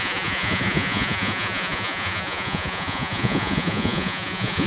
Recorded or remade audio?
remade